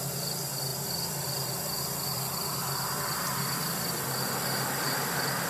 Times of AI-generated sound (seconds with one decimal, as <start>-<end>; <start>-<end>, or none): 0.7-4.0